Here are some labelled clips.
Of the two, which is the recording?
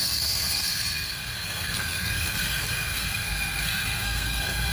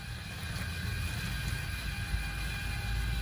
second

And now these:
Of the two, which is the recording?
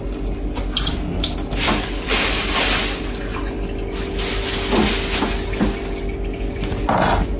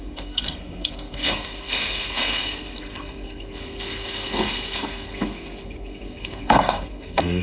first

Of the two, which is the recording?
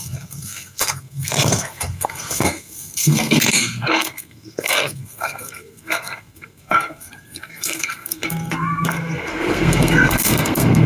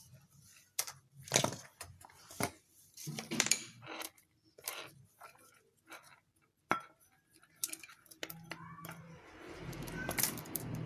second